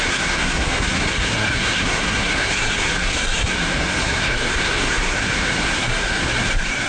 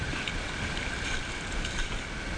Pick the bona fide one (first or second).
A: second